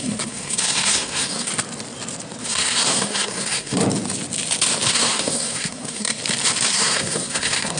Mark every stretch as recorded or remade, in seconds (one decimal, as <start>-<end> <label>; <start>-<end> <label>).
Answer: 0.0-1.5 remade; 1.5-2.4 recorded; 2.4-3.8 remade; 3.8-4.9 recorded; 4.9-6.2 remade; 6.2-6.7 recorded; 6.7-7.8 remade